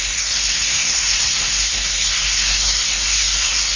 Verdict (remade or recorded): remade